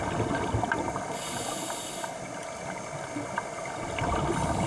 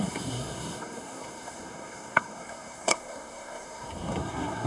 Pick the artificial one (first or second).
second